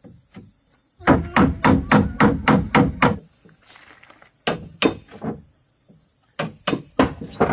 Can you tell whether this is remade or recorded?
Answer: recorded